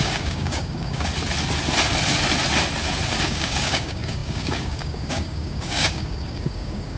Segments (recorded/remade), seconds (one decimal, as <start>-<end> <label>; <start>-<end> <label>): 0.0-1.1 remade; 1.1-3.2 recorded; 3.2-7.0 remade